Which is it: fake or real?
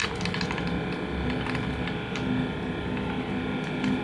real